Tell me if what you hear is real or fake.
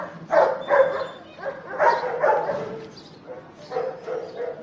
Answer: real